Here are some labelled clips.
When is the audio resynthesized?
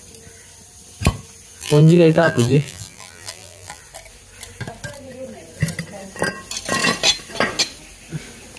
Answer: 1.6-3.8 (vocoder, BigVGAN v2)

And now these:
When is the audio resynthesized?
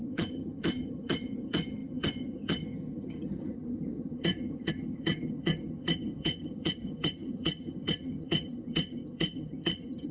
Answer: 0.0-10.1 (vocoder, HiFi-GAN)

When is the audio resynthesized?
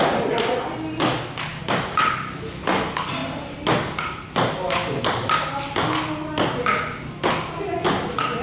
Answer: 1.5-2.1 (codec, DAC)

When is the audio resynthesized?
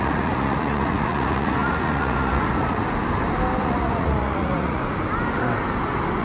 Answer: 0.0-2.8 (vocoder, Vocos); 3.6-4.8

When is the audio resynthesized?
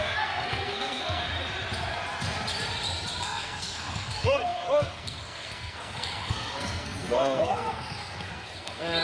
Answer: 0.0-1.3 (codec, SNAC); 3.2-9.0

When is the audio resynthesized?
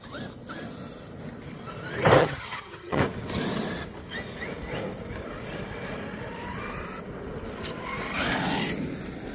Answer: 2.2-3.0 (vocoder, HiFi-GAN)